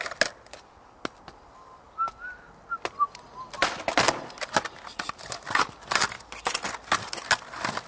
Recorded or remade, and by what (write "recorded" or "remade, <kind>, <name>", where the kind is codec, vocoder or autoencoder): recorded